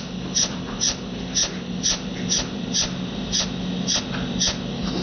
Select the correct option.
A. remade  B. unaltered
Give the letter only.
B